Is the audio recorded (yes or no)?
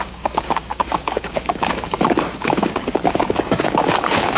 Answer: no